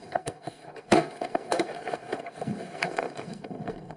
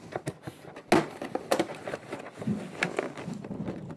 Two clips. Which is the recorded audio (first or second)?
second